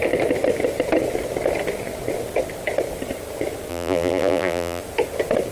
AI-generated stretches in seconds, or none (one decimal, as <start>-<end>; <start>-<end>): 3.7-4.8